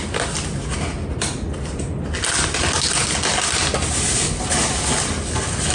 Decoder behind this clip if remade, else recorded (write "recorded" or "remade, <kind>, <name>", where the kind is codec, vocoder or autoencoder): recorded